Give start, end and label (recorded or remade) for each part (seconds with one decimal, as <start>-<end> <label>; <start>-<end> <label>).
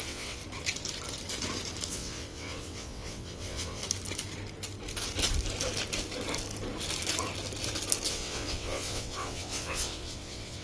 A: 0.0-0.4 remade; 0.4-1.9 recorded; 1.9-3.8 remade; 3.8-8.1 recorded; 8.1-10.6 remade